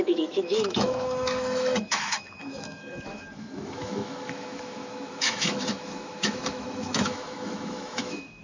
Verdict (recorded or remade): remade